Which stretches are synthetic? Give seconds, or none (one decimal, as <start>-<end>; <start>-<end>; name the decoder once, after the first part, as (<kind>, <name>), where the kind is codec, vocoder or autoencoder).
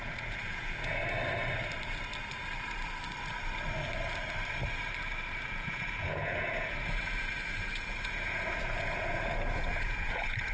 0.0-1.0 (vocoder, Vocos); 5.5-10.5